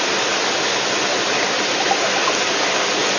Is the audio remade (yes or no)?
no